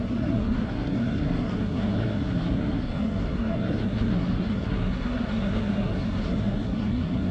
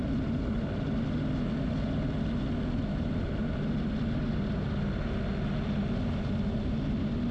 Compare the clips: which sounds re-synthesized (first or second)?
first